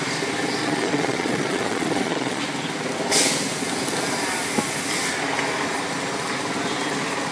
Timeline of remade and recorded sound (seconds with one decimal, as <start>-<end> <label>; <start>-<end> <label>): 0.0-0.6 recorded; 0.6-2.4 remade; 2.4-7.3 recorded